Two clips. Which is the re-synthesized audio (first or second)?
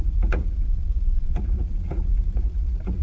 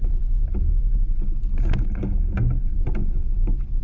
first